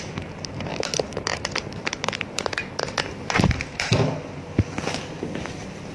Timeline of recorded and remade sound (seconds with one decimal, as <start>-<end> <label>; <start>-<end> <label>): 0.0-3.9 remade; 3.9-5.5 recorded; 5.5-5.9 remade